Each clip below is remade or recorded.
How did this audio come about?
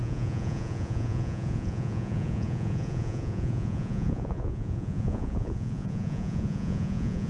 remade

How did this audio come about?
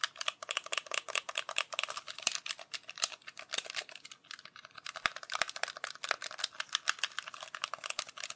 recorded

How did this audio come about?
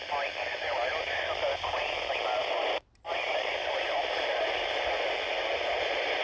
recorded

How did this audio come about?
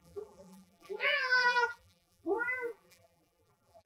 remade